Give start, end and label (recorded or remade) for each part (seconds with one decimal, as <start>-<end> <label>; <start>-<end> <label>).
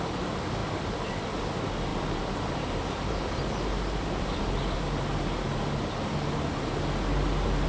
0.0-1.9 recorded; 1.9-4.4 remade; 4.4-7.7 recorded